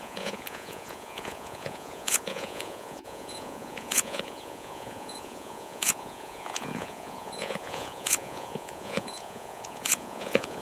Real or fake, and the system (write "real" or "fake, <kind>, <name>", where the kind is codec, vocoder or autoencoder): fake, vocoder, Vocos